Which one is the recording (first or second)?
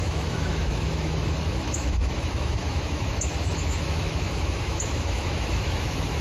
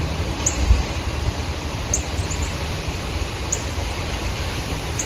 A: second